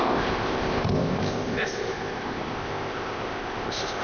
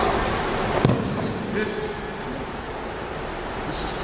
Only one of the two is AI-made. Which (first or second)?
first